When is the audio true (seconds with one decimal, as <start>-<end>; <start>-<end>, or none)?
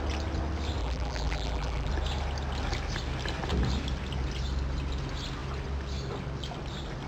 0.0-0.8; 1.9-7.1